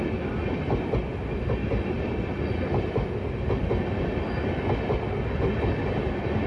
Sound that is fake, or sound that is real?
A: real